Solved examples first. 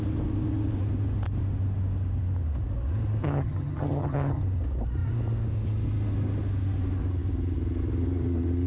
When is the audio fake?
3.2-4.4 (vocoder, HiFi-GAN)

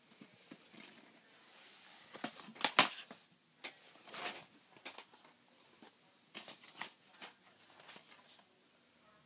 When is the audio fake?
none

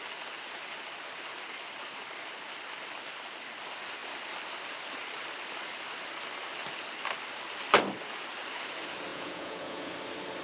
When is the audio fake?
9.1-9.9 (vocoder, Vocos)